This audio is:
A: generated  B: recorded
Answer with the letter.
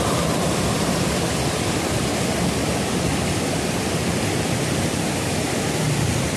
A